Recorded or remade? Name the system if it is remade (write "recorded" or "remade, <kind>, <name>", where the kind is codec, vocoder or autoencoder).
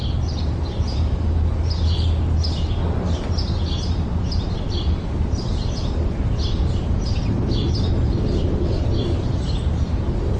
recorded